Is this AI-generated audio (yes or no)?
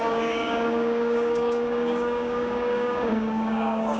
yes